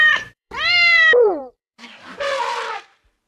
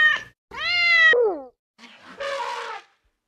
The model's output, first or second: first